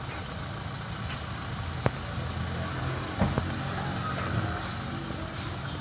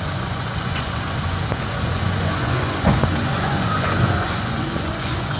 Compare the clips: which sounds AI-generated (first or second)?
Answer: second